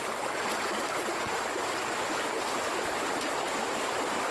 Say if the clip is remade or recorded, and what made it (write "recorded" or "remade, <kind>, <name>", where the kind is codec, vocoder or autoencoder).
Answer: recorded